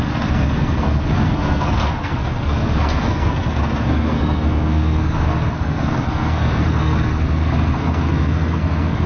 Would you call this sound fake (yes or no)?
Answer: yes